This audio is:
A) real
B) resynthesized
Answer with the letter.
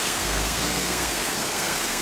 B